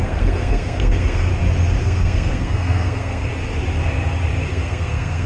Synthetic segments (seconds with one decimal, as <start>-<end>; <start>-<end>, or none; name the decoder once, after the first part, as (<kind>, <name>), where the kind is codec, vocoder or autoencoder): 0.0-1.3 (codec, SNAC); 1.8-3.3; 4.5-5.3